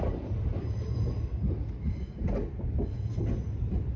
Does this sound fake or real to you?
real